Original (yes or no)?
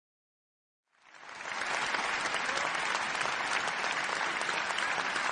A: yes